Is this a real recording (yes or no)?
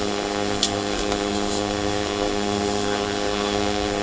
no